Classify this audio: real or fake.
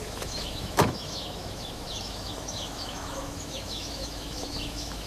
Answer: fake